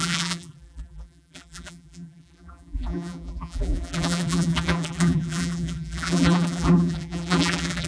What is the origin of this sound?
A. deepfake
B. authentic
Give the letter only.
A